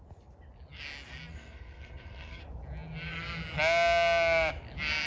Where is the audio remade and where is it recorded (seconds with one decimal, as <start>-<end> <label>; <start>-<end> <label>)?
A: 0.0-1.3 recorded; 1.3-2.4 remade; 2.4-5.1 recorded